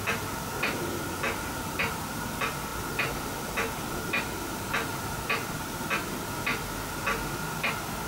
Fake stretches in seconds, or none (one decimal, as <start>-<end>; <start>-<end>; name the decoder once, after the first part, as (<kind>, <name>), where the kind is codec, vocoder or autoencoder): none

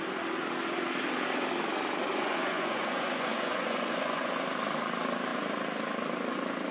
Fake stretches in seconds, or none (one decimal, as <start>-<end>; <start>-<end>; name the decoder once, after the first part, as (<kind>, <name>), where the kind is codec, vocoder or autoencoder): 2.1-4.3 (vocoder, Vocos)

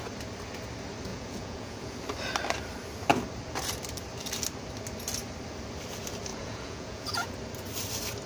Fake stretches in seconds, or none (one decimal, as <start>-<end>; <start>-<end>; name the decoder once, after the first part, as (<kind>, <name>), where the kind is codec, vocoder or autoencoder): 1.1-2.0 (vocoder, Vocos); 6.3-7.3

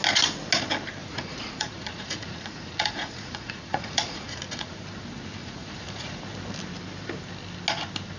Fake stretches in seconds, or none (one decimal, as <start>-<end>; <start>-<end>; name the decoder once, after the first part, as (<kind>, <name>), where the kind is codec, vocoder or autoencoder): 1.0-4.8 (vocoder, Vocos); 5.4-6.2

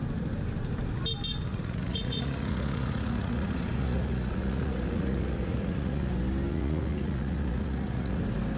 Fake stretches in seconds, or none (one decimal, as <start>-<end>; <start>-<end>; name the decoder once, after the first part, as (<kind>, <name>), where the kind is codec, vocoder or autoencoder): 1.5-6.1 (vocoder, Vocos); 6.5-8.2